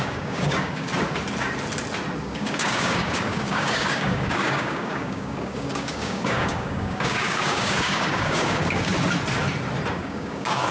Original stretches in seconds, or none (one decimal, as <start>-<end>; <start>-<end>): 0.9-2.2; 8.9-9.9